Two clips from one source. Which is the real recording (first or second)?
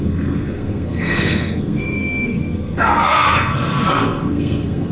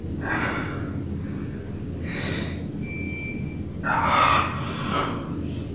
second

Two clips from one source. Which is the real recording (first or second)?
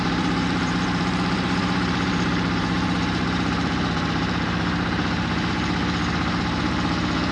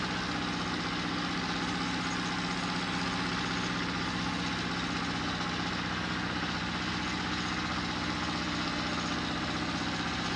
second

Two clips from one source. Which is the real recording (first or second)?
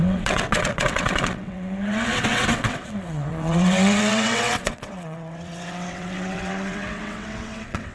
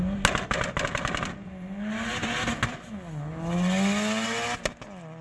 second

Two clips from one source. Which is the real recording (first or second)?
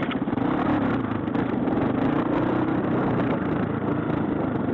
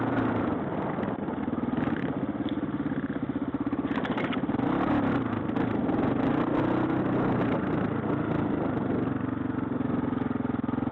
second